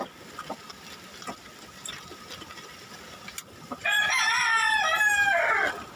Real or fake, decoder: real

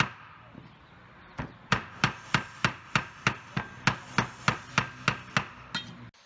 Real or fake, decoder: real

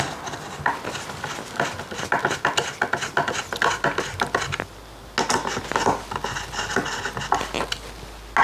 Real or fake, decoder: real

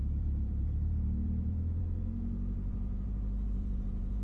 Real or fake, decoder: fake, vocoder, Vocos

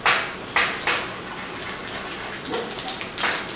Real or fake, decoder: real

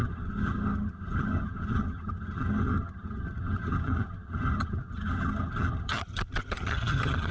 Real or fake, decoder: fake, vocoder, HiFi-GAN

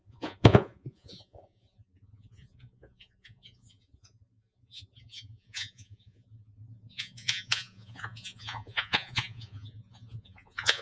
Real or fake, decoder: fake, vocoder, Vocos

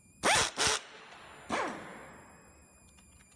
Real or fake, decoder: real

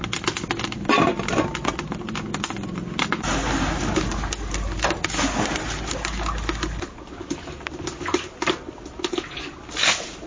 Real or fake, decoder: real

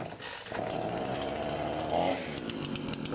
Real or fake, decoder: real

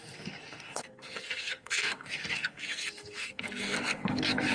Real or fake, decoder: fake, codec, SNAC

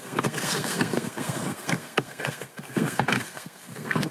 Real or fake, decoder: fake, codec, SNAC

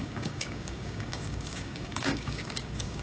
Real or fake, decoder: fake, codec, DAC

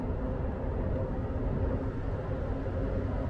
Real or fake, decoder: real